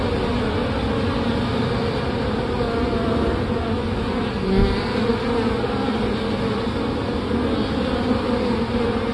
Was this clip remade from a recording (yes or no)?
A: no